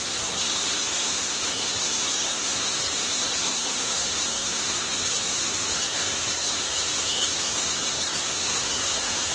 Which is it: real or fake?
fake